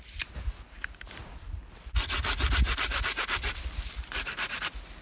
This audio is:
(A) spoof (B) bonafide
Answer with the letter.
B